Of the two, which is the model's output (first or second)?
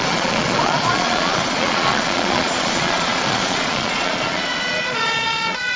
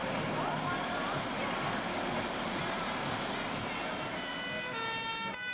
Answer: first